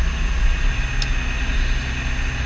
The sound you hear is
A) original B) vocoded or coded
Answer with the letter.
A